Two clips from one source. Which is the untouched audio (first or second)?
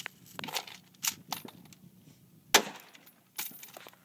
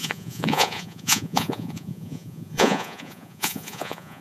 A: first